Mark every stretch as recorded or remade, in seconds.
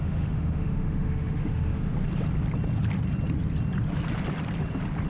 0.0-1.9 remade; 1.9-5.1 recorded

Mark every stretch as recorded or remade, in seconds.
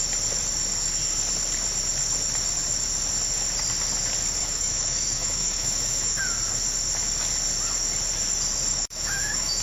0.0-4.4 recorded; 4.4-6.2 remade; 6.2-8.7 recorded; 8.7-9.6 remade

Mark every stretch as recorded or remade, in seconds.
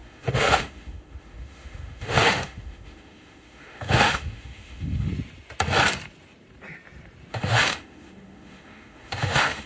0.0-5.1 remade; 5.1-7.3 recorded; 7.3-9.7 remade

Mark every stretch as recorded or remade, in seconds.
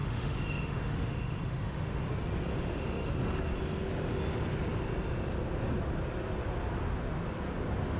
0.0-2.0 remade; 2.0-2.5 recorded; 2.5-3.1 remade; 3.1-8.0 recorded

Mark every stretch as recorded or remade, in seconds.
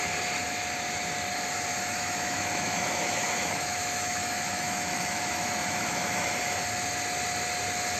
0.0-1.7 recorded; 1.7-6.5 remade; 6.5-8.0 recorded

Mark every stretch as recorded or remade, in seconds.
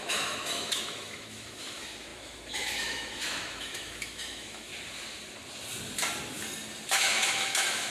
0.0-4.7 remade; 4.7-6.9 recorded; 6.9-7.9 remade